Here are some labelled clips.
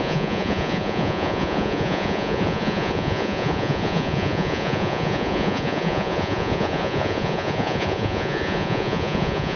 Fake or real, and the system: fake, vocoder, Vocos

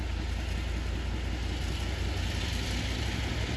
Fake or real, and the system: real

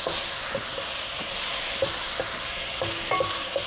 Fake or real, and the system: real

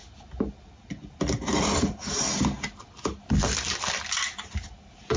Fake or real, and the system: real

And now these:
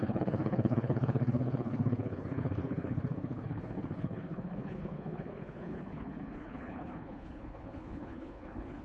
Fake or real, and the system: fake, codec, HILCodec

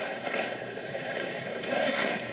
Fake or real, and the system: fake, codec, SNAC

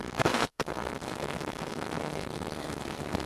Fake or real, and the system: fake, codec, SNAC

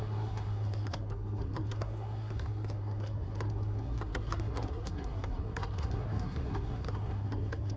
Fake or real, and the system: fake, codec, SNAC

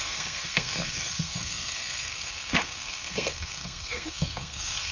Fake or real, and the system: fake, codec, SNAC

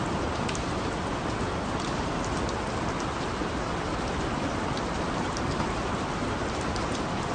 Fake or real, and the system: real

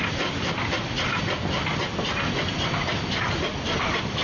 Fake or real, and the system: real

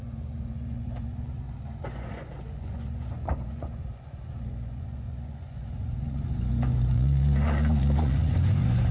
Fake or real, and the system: fake, vocoder, Vocos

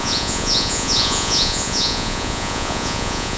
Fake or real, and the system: fake, vocoder, Vocos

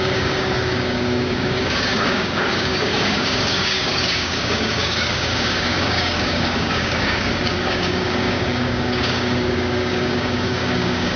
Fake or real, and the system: fake, codec, DAC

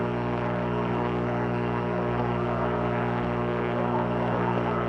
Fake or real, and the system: fake, codec, SNAC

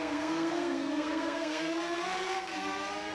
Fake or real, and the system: fake, codec, SNAC